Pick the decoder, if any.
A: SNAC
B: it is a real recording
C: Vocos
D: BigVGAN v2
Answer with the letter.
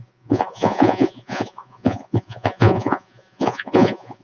C